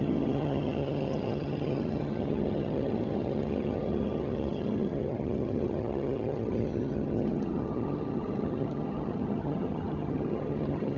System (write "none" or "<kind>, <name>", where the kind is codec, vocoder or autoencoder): vocoder, HiFi-GAN